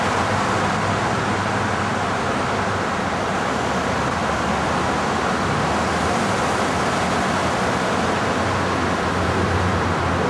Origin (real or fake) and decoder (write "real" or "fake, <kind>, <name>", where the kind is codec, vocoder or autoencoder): real